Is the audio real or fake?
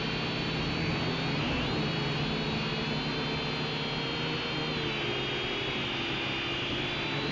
real